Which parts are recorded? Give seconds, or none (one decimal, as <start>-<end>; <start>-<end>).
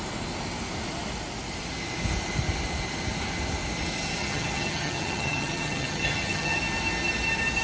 0.0-4.2; 6.6-7.6